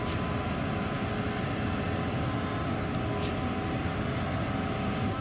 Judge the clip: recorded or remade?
recorded